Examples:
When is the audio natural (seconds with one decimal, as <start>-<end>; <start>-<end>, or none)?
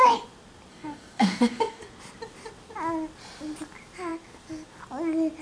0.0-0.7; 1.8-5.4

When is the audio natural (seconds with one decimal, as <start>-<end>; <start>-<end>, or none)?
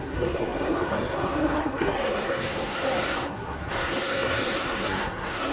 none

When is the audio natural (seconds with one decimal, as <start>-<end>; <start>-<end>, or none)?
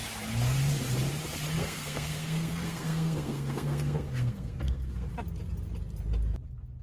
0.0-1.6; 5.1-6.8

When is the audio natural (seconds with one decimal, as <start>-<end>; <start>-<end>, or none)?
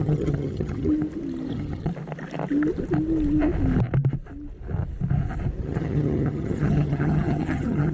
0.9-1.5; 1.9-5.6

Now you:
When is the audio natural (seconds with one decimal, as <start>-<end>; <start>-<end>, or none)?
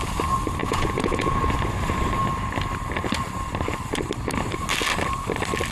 0.0-0.6; 1.4-5.7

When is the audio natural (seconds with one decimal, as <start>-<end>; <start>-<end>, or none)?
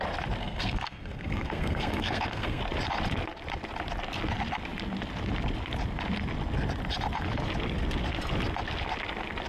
0.0-0.4; 2.6-9.5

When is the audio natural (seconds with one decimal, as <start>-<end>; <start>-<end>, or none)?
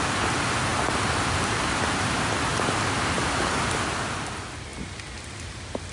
0.0-2.5; 3.2-5.9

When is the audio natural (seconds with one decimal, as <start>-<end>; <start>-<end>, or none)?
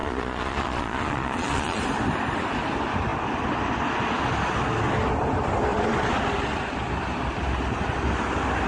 1.8-8.7